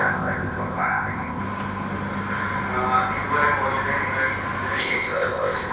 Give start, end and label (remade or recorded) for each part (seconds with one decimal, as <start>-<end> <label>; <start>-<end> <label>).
0.0-1.4 remade; 1.4-4.8 recorded; 4.8-5.7 remade